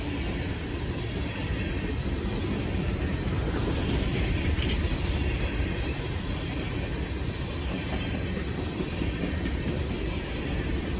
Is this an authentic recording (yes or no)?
no